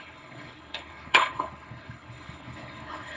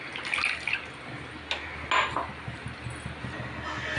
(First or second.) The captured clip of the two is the second